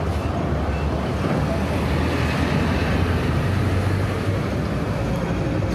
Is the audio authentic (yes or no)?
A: yes